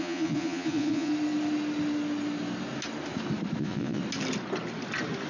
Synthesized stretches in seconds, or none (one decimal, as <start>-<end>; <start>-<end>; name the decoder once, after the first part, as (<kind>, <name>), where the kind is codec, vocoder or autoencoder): 0.0-1.1 (vocoder, Vocos); 3.6-4.0